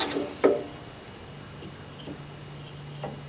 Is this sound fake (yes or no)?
no